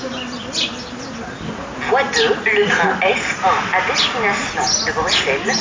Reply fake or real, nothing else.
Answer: real